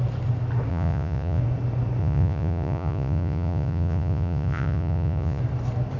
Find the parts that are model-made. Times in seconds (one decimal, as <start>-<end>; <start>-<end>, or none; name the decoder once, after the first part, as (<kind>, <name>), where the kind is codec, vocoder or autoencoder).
0.7-1.4 (vocoder, Vocos); 2.0-5.4